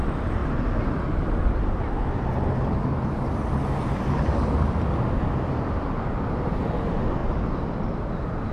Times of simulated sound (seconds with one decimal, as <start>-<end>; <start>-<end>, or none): none